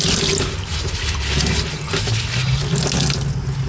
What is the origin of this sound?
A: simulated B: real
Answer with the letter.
B